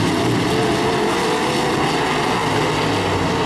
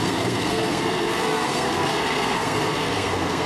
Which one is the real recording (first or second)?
first